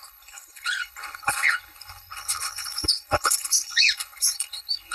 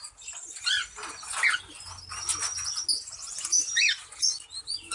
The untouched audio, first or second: second